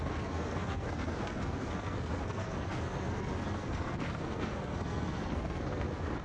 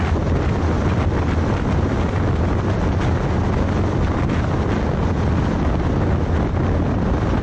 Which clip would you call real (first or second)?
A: second